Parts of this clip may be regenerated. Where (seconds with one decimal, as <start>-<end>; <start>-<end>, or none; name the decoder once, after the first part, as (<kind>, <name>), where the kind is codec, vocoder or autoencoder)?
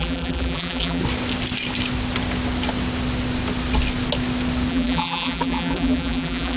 0.0-1.0 (vocoder, BigVGAN v2); 4.7-6.6